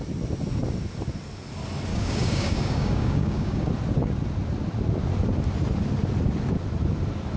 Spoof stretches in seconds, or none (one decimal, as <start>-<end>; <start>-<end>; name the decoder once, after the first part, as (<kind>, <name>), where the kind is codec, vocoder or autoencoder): 1.9-3.7 (codec, DAC)